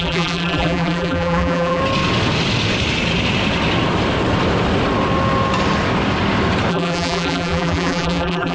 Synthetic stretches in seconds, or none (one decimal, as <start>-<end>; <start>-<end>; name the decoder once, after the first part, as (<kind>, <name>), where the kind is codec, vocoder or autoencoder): 0.0-1.8 (vocoder, BigVGAN v2); 6.7-8.5

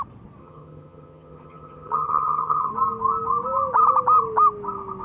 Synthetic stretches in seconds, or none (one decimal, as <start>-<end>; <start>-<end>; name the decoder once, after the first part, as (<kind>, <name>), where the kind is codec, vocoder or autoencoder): 0.4-2.7 (vocoder, HiFi-GAN)

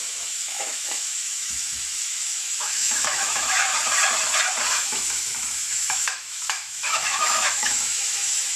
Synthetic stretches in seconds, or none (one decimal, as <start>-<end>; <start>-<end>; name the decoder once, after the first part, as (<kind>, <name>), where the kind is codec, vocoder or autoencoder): 0.0-3.7 (autoencoder, DAC-VAE); 4.7-8.6

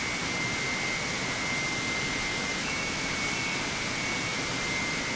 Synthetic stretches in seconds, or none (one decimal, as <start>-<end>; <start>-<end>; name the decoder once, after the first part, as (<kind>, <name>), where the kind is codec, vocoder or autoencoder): 2.3-3.1 (autoencoder, DAC-VAE)

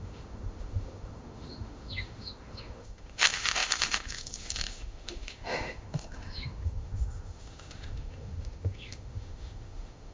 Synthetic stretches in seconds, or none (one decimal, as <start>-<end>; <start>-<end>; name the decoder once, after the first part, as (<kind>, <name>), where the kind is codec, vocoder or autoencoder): 0.0-10.1 (autoencoder, DAC-VAE)